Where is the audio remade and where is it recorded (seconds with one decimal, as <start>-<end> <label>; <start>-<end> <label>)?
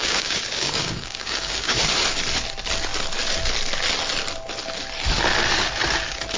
0.0-1.8 remade; 1.8-6.4 recorded